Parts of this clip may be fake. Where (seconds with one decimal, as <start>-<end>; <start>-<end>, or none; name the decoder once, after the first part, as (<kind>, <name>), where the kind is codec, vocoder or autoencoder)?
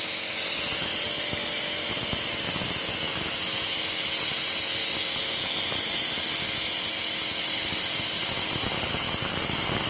none